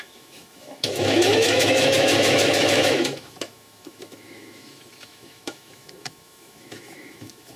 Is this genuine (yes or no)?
no